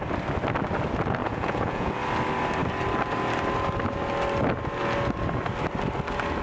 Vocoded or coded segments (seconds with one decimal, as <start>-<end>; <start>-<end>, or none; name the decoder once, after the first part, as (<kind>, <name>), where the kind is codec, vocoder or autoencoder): 1.2-1.9 (vocoder, Vocos)